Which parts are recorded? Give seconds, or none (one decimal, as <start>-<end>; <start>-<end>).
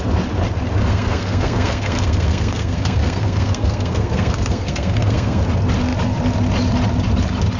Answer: 0.0-0.8; 5.4-7.6